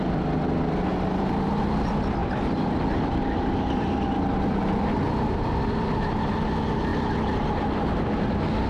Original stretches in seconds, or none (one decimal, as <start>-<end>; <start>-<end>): 0.0-0.9; 1.6-2.2; 6.3-6.9; 7.9-8.7